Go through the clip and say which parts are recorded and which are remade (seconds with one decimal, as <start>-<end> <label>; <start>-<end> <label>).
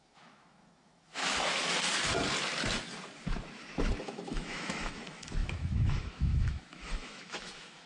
0.0-1.2 remade; 1.2-4.0 recorded; 4.0-7.9 remade